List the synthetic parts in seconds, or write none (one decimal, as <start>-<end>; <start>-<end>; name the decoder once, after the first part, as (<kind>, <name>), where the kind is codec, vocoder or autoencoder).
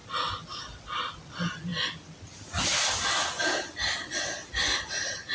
none